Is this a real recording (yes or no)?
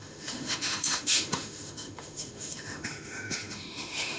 no